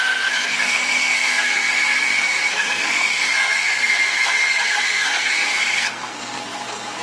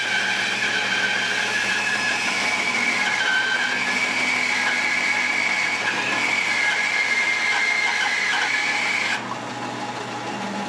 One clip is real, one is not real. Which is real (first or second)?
second